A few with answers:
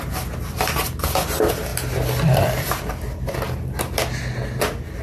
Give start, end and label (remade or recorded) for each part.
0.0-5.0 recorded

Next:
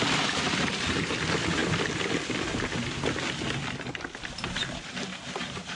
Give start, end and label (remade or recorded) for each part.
0.0-5.8 recorded

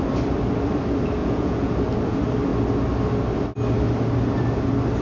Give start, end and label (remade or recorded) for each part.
0.0-1.2 recorded; 1.2-1.7 remade; 1.7-5.0 recorded